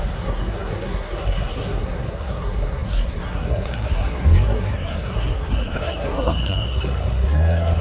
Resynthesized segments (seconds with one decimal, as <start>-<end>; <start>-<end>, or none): 0.0-7.8